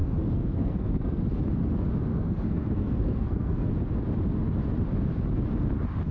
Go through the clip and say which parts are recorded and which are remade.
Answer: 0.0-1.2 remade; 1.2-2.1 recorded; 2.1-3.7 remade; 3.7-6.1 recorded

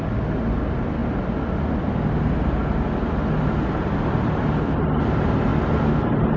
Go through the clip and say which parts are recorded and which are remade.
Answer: 0.0-6.4 recorded

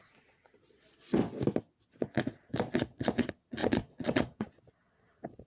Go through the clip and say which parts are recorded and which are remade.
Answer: 0.0-1.2 remade; 1.2-2.0 recorded; 2.0-5.5 remade

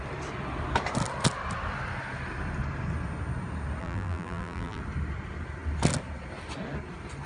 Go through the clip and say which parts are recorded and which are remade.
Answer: 0.0-3.8 recorded; 3.8-4.8 remade; 4.8-7.3 recorded

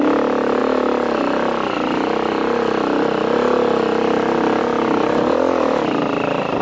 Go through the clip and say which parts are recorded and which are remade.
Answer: 0.0-6.6 recorded

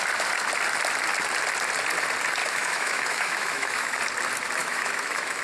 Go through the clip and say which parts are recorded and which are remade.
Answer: 0.0-2.4 recorded; 2.4-4.0 remade; 4.0-4.6 recorded; 4.6-5.4 remade

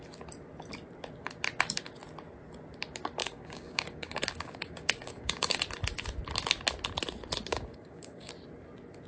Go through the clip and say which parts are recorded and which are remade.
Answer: 0.0-3.2 recorded; 3.2-5.6 remade; 5.6-7.5 recorded; 7.5-8.3 remade; 8.3-9.1 recorded

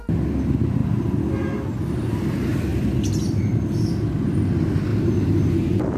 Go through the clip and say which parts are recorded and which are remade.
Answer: 0.0-2.7 recorded; 2.7-4.2 remade; 4.2-6.0 recorded